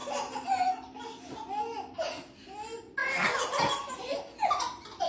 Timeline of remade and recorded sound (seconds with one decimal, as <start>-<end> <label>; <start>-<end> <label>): 0.0-5.1 recorded